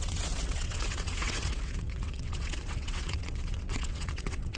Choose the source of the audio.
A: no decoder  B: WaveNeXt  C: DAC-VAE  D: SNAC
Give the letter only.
B